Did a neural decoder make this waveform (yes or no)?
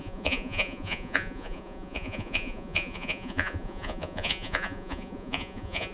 yes